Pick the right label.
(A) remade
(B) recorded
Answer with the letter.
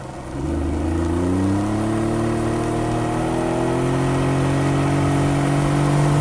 B